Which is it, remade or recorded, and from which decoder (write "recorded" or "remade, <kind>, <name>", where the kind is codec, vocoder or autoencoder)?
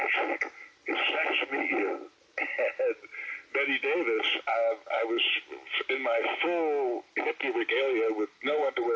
recorded